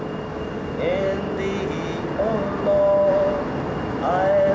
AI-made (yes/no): no